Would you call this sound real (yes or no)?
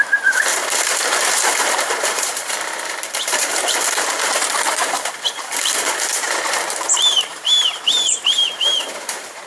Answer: no